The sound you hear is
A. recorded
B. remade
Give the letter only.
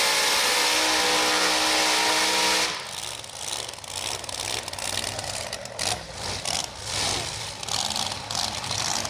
A